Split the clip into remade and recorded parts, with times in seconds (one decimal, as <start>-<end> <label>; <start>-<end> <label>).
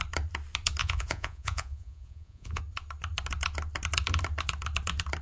0.0-0.8 recorded; 0.8-2.6 remade; 2.6-5.2 recorded